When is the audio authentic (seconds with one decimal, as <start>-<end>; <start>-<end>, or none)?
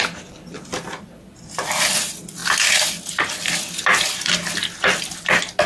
2.4-4.8